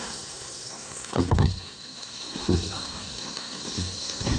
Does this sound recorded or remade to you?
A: remade